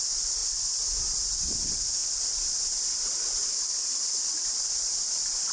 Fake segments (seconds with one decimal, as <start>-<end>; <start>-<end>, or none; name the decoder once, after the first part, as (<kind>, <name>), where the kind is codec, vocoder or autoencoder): 0.0-0.4 (vocoder, BigVGAN v2); 1.0-5.5